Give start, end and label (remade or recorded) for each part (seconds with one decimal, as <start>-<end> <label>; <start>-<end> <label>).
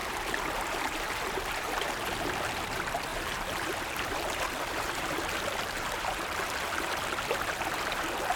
0.0-2.6 remade; 2.6-3.1 recorded; 3.1-7.2 remade; 7.2-8.4 recorded